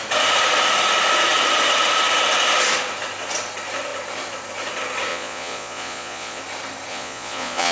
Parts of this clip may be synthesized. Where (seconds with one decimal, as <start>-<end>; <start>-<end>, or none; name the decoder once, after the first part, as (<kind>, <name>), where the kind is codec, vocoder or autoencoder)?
5.1-6.4 (vocoder, Vocos); 6.9-7.7